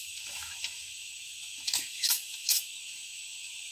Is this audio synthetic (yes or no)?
yes